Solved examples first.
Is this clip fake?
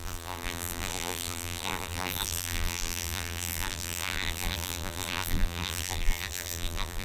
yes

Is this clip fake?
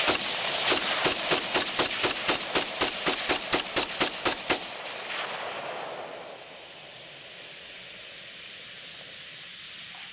no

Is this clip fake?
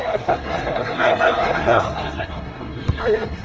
yes